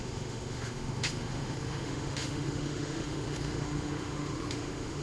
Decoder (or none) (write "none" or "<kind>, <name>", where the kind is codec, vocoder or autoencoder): autoencoder, DAC-VAE